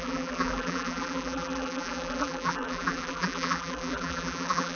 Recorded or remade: remade